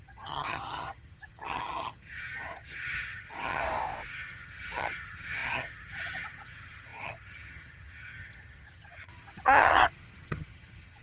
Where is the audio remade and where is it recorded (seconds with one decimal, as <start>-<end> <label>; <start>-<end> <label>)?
0.0-3.6 remade; 3.6-4.1 recorded; 4.1-11.0 remade